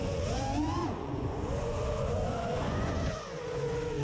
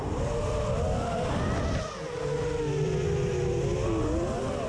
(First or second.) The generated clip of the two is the first